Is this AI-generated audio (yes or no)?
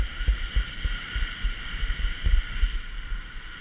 yes